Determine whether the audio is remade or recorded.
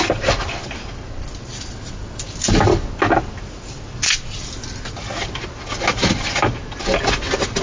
recorded